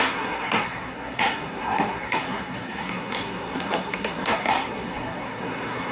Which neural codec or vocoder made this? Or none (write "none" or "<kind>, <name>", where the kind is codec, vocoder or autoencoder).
codec, SNAC